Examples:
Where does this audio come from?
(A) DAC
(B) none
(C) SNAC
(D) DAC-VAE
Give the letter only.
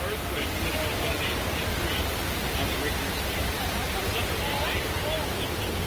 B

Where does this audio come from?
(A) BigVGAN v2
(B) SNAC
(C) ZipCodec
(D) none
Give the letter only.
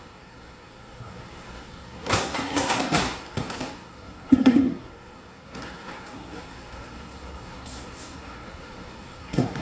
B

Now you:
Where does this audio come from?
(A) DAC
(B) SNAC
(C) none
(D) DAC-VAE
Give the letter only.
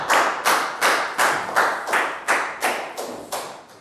C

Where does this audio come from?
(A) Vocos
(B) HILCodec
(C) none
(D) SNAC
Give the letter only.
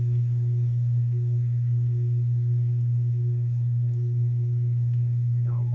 D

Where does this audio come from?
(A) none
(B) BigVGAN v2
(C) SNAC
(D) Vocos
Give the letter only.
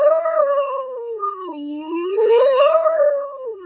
C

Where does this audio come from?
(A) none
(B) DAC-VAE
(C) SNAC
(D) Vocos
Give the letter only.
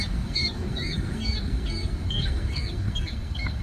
C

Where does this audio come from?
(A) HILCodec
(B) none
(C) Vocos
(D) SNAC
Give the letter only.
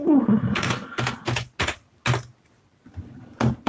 B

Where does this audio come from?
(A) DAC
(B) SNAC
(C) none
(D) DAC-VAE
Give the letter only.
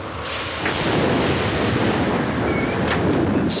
C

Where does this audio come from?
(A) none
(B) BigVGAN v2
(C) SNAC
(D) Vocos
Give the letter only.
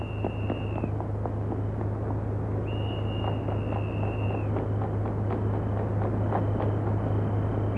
A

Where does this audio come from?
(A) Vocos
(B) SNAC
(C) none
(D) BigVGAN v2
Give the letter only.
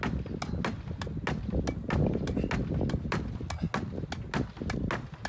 C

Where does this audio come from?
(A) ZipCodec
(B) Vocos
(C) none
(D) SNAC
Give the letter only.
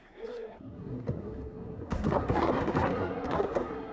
D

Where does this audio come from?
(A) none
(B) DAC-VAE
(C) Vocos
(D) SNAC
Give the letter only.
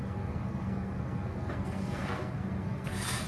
D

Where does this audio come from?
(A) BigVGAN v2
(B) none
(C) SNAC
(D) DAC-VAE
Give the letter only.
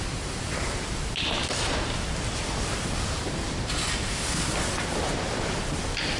B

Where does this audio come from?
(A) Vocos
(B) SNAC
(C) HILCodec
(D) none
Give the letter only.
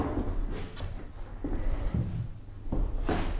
D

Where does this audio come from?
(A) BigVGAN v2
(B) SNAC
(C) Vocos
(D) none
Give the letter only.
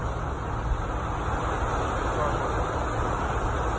D